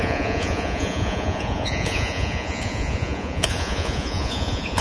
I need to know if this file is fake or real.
fake